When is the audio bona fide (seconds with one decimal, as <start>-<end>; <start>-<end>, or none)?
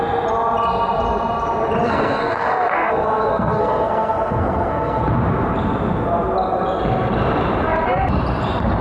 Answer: 0.0-1.8; 5.0-8.8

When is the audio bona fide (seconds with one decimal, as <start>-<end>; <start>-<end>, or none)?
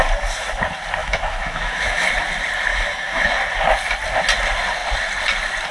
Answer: 0.0-1.0; 2.1-2.7; 3.4-5.7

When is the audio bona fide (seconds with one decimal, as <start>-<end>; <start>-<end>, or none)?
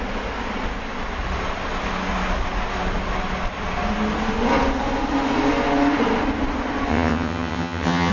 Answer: 0.0-6.9